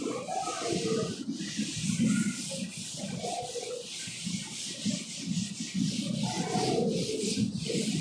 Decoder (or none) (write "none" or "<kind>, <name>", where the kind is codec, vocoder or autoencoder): none